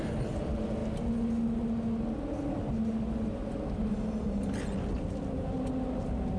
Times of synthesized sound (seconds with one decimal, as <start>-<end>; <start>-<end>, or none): none